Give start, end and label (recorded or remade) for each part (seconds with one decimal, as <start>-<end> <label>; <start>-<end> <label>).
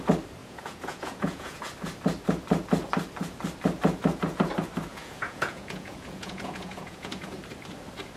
0.0-0.4 recorded; 0.4-1.6 remade; 1.6-4.9 recorded; 4.9-7.4 remade; 7.4-8.2 recorded